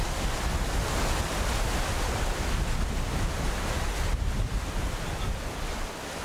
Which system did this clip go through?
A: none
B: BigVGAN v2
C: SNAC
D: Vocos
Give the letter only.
A